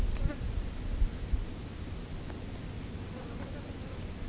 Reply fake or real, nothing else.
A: real